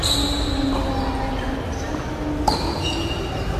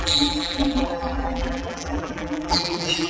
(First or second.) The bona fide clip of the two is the first